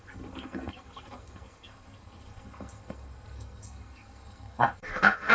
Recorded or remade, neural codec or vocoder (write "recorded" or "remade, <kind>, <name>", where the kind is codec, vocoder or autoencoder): remade, codec, SNAC